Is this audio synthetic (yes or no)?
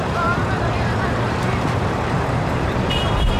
yes